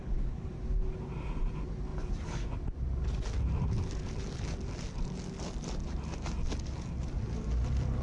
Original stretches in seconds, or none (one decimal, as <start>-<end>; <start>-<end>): 0.5-8.0